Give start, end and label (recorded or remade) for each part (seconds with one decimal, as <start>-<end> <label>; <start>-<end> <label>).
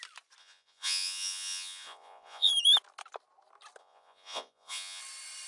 0.0-0.4 recorded; 0.4-2.5 remade; 2.5-3.8 recorded; 3.8-5.0 remade; 5.0-5.5 recorded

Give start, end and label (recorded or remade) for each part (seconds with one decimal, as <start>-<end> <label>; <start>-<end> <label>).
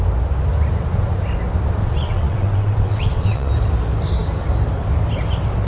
0.0-1.8 recorded; 1.8-3.5 remade; 3.5-5.7 recorded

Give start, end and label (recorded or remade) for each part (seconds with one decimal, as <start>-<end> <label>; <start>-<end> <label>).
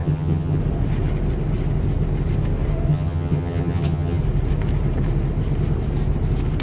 0.0-0.6 remade; 0.6-2.9 recorded; 2.9-4.2 remade; 4.2-6.6 recorded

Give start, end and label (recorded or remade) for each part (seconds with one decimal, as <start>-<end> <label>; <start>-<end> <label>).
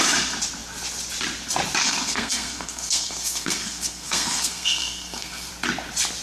0.0-1.8 recorded; 1.8-5.5 remade; 5.5-6.2 recorded